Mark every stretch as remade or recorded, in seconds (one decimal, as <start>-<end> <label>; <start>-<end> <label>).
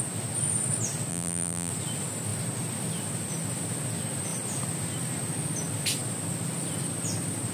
0.0-1.1 recorded; 1.1-1.7 remade; 1.7-7.5 recorded